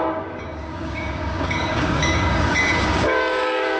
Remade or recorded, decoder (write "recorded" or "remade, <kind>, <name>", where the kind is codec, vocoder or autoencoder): remade, codec, DAC